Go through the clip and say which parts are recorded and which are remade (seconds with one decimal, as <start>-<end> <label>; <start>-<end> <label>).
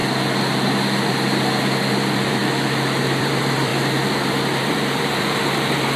0.0-1.9 recorded; 1.9-2.4 remade; 2.4-3.0 recorded; 3.0-3.7 remade; 3.7-4.6 recorded; 4.6-6.0 remade